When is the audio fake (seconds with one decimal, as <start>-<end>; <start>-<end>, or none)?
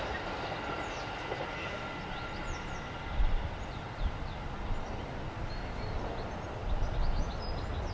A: none